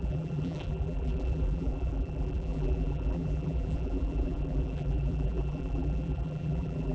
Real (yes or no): no